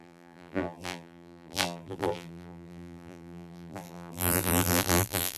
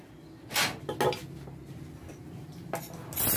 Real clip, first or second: second